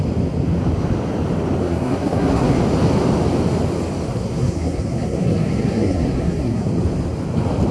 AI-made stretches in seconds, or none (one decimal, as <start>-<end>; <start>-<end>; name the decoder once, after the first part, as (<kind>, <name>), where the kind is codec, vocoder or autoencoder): 1.6-2.6 (codec, SNAC); 4.1-6.7